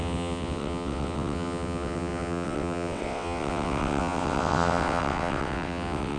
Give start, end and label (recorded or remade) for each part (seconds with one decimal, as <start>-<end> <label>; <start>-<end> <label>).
0.0-6.2 remade